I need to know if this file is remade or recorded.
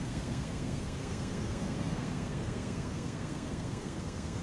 remade